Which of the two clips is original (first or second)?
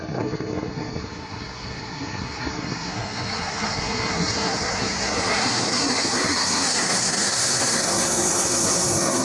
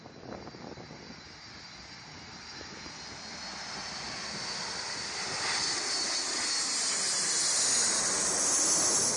second